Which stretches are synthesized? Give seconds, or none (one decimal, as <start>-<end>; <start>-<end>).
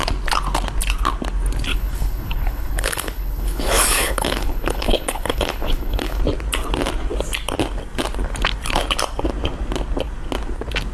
1.7-6.2